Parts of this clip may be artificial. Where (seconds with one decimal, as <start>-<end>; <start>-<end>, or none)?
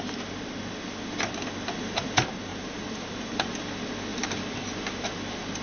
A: 2.5-3.5; 4.1-5.0